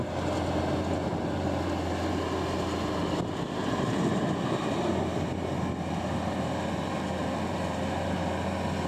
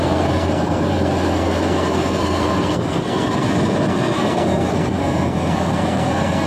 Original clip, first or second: first